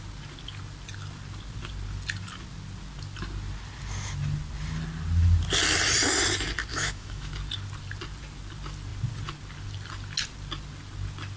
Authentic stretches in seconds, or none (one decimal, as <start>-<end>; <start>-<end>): 0.0-6.7; 7.3-11.4